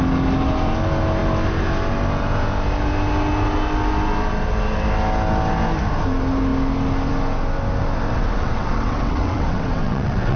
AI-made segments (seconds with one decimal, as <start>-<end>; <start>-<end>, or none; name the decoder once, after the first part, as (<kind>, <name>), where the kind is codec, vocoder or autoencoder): 8.1-10.4 (vocoder, WaveNeXt)